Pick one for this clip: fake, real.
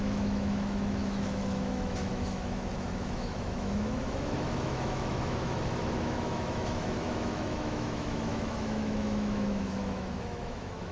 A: fake